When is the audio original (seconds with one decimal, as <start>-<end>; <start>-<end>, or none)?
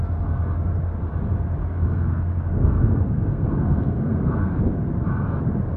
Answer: 0.0-1.6; 4.6-5.8